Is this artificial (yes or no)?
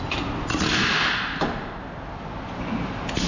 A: no